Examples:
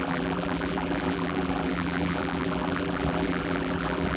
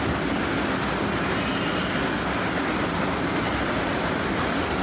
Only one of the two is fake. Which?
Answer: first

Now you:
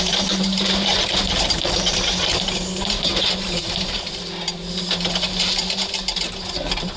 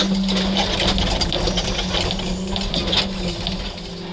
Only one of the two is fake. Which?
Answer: first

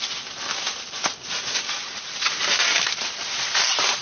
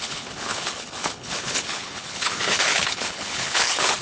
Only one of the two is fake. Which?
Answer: second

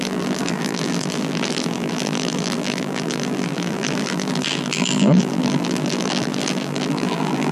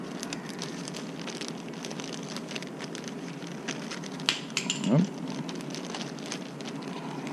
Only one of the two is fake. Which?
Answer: first